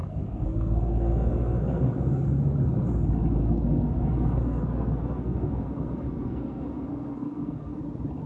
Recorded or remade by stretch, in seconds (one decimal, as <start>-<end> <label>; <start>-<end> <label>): 0.0-1.9 remade; 1.9-3.4 recorded; 3.4-7.8 remade; 7.8-8.3 recorded